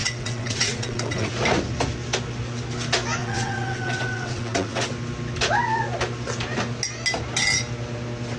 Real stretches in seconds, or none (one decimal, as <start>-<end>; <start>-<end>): 1.3-3.2; 4.9-8.4

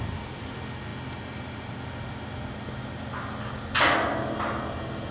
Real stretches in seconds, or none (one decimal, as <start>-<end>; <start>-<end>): 0.0-5.1

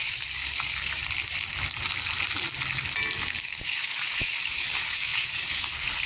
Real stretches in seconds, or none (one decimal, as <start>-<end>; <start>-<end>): 1.0-3.4

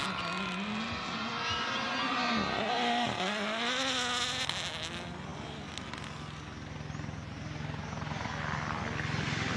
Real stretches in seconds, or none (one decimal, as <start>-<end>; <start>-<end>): 0.0-9.6

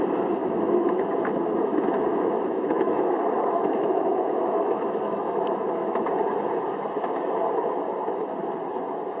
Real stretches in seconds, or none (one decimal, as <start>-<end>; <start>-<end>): 0.0-0.4; 1.4-2.1; 6.0-9.2

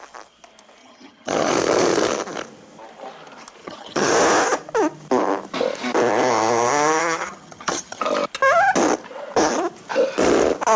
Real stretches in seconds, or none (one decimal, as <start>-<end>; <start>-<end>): 0.0-0.8; 1.5-3.6; 4.1-7.0; 8.0-10.8